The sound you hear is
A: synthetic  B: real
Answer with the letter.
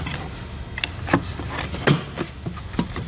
B